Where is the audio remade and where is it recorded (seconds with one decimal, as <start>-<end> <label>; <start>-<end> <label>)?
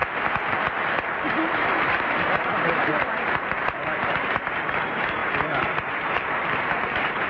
0.0-1.3 recorded; 1.3-7.3 remade